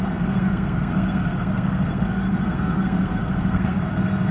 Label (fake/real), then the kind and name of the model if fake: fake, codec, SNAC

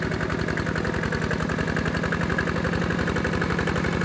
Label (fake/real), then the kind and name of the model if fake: real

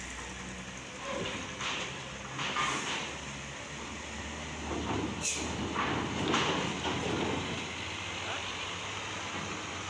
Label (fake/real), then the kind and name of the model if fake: real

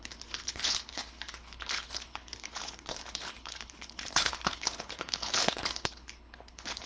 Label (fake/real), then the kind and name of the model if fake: fake, codec, HILCodec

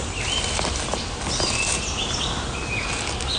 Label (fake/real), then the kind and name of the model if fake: real